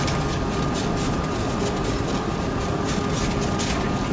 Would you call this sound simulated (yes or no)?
no